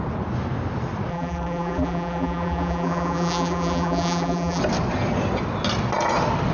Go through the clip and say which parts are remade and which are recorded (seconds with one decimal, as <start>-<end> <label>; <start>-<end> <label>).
0.0-1.1 recorded; 1.1-4.6 remade; 4.6-6.5 recorded